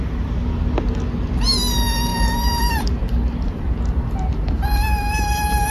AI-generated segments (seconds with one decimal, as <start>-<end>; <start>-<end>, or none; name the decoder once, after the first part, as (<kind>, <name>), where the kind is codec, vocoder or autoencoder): 2.1-5.7 (vocoder, BigVGAN v2)